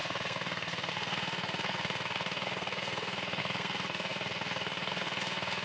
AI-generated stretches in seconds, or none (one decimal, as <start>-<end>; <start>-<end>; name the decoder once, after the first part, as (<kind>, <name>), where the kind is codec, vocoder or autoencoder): 0.0-5.6 (codec, SNAC)